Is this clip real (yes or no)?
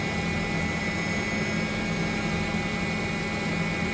yes